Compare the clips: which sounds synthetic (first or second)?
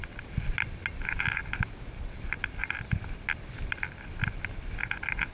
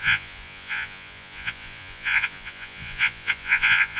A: second